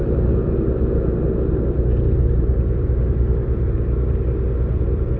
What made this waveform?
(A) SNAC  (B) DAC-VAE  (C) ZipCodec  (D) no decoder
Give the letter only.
D